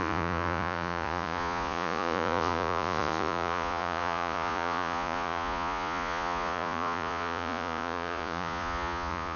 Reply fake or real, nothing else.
fake